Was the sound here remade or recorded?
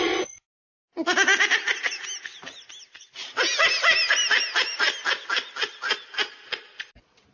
recorded